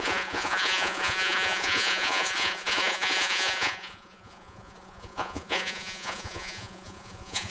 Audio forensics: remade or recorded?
remade